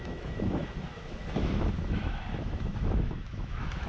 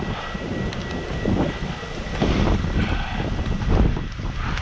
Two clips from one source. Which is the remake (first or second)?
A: first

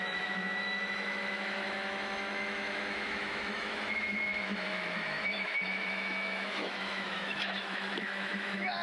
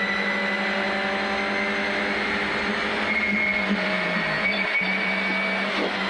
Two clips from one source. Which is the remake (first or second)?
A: first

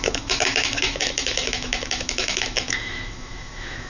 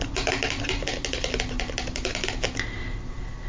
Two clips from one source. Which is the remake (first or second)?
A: first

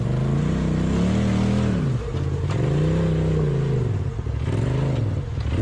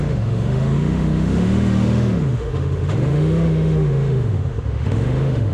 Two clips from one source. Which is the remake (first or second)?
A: second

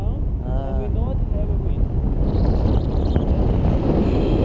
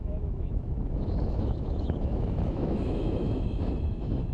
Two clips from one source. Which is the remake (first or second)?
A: second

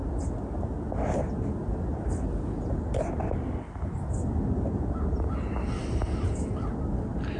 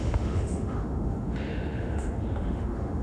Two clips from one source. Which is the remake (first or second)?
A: second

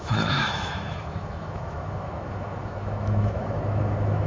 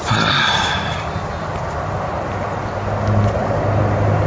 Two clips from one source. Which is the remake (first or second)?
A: first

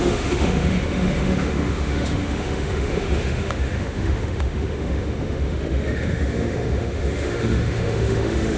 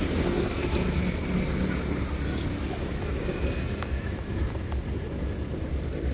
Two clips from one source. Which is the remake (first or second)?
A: first